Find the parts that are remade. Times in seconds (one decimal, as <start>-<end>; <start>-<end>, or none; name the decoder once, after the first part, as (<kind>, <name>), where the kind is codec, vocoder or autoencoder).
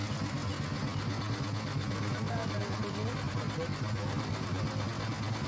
none